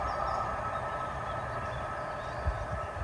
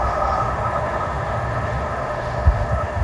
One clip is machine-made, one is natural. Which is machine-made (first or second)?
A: second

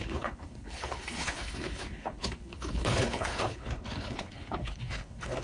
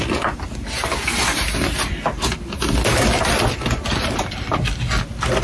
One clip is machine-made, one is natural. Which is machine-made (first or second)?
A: first